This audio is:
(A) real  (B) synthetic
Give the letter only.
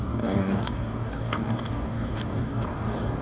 B